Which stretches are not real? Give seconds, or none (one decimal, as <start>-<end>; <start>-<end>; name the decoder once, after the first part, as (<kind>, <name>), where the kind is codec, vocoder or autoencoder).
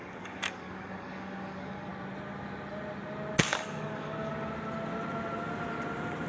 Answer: 0.0-1.9 (codec, DAC); 3.4-4.3